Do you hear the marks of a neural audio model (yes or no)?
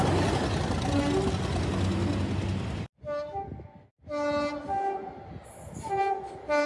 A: no